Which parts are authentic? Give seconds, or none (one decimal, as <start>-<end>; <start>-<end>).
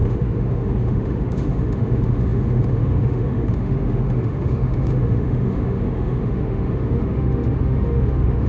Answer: none